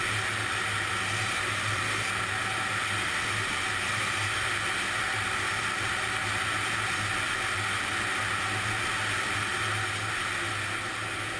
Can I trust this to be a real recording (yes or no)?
yes